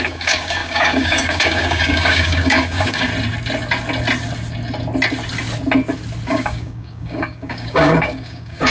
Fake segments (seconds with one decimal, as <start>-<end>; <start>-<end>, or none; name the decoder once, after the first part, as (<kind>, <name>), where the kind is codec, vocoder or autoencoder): 0.0-3.1 (codec, DAC); 6.3-8.7